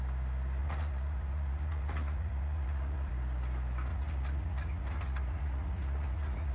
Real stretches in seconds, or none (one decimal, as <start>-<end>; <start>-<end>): 0.0-0.6; 3.1-3.9